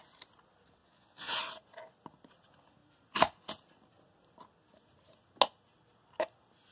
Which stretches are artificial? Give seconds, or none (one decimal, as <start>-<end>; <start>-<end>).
0.8-1.4